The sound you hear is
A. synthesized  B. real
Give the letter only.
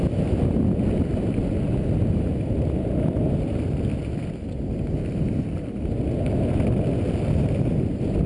B